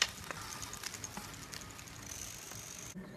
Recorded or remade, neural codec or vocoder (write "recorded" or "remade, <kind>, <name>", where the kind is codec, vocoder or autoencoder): recorded